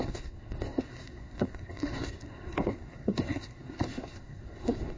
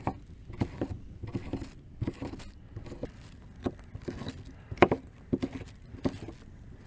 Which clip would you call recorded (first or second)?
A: second